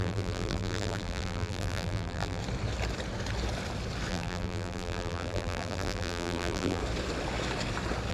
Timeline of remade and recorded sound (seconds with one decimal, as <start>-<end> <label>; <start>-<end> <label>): 0.0-2.4 remade; 2.4-4.1 recorded; 4.1-6.8 remade; 6.8-8.1 recorded